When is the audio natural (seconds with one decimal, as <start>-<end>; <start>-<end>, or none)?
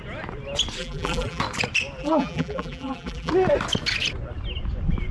0.0-0.8; 1.4-2.0; 3.3-5.1